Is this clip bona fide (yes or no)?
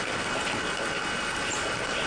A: yes